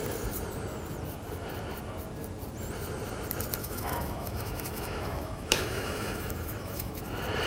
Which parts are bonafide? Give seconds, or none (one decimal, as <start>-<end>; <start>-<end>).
0.0-3.6; 7.0-7.5